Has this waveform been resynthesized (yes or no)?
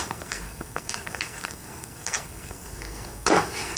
yes